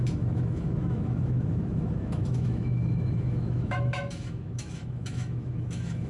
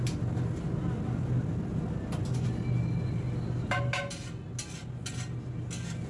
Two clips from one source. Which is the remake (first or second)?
first